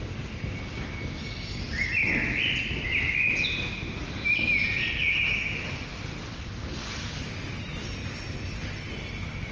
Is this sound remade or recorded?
recorded